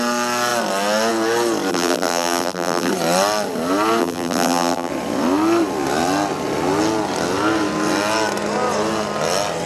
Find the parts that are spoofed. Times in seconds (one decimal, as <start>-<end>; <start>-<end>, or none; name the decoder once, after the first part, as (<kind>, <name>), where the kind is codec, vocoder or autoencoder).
1.7-2.9 (vocoder, BigVGAN v2); 4.0-4.9